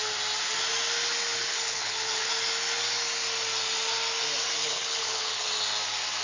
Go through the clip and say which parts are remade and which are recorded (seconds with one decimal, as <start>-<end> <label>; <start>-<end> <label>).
0.0-1.5 recorded; 1.5-2.3 remade; 2.3-4.6 recorded; 4.6-5.5 remade; 5.5-6.2 recorded